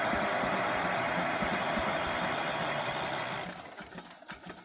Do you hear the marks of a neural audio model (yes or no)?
no